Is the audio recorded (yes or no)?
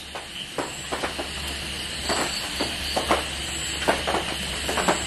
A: yes